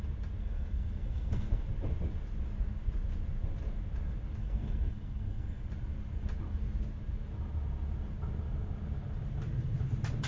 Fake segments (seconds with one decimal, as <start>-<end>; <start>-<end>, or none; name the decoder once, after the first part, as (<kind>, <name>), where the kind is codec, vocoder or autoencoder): 0.4-1.6 (codec, SNAC); 4.4-5.6